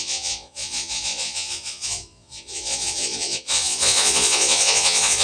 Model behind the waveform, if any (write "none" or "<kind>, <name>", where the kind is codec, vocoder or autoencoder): vocoder, Vocos